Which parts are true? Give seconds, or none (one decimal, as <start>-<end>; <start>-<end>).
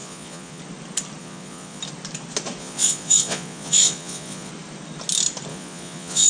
0.6-1.2; 1.8-2.6; 4.5-5.5